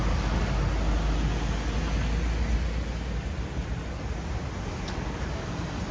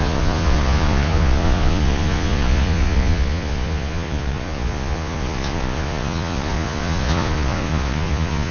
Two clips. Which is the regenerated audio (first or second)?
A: second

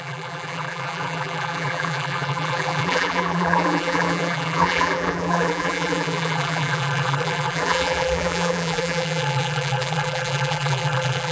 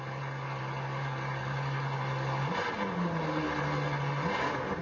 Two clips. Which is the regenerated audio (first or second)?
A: first